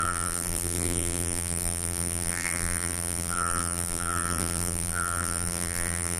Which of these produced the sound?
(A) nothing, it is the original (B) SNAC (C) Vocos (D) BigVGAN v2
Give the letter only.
D